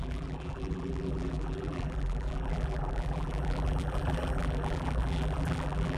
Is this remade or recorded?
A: remade